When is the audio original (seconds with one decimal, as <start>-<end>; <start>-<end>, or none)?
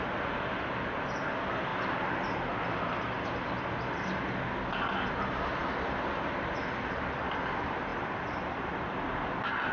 0.0-9.7